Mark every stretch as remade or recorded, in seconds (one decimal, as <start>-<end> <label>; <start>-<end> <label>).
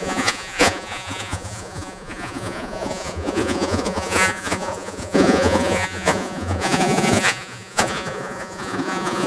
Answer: 0.0-9.3 remade